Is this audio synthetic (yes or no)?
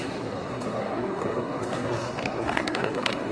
yes